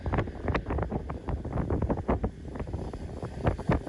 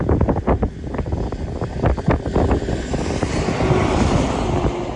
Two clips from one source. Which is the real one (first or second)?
second